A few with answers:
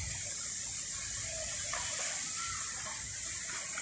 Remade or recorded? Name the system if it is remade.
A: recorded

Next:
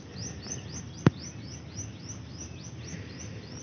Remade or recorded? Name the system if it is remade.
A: recorded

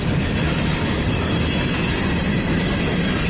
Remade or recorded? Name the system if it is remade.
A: recorded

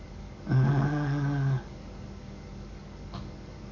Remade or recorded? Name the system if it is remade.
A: remade, codec, DAC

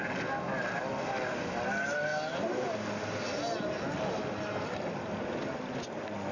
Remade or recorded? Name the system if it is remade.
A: recorded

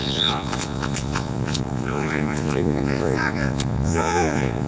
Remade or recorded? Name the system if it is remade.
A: remade, vocoder, Vocos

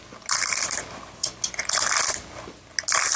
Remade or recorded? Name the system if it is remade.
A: recorded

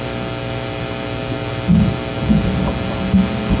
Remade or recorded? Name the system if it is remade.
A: recorded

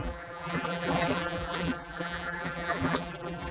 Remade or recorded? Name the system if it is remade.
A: remade, vocoder, BigVGAN v2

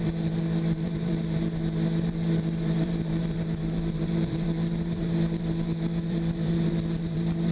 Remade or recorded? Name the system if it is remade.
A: remade, vocoder, BigVGAN v2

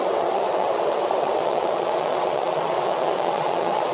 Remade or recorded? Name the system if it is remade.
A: remade, vocoder, WaveNeXt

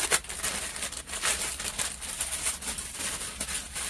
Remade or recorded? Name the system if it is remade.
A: recorded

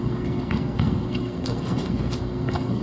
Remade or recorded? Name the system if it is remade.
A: remade, codec, SNAC